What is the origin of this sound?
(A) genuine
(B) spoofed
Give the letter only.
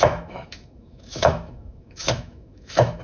B